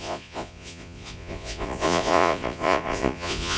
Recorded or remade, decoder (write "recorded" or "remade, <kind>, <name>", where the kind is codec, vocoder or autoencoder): remade, vocoder, Vocos